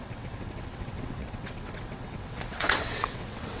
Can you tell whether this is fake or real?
fake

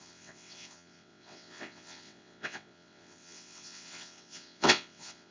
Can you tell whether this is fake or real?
fake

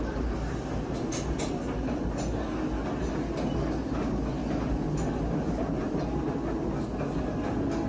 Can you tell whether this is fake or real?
real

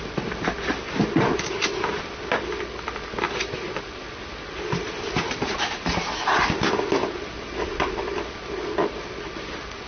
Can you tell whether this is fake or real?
real